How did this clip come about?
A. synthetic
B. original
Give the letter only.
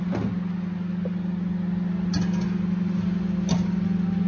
B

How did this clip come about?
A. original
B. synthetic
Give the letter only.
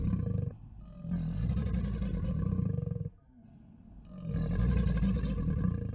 A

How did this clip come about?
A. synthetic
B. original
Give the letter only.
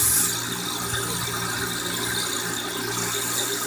B